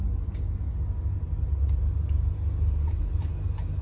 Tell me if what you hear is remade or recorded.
recorded